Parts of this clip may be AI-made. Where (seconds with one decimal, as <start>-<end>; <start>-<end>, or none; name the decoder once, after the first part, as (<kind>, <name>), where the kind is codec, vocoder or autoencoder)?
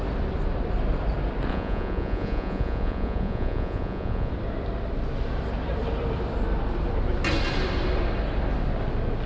1.5-4.3 (vocoder, Vocos)